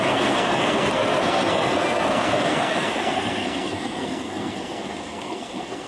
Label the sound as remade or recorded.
remade